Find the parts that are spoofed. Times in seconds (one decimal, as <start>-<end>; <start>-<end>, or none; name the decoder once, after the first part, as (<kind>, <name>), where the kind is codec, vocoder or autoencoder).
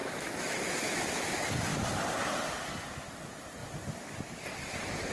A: 0.0-1.0 (autoencoder, DAC-VAE)